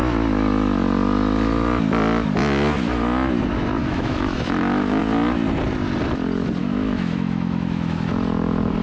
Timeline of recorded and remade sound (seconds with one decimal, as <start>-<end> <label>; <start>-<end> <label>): 0.0-3.8 recorded; 3.8-5.0 remade; 5.0-6.6 recorded; 6.6-8.1 remade; 8.1-8.8 recorded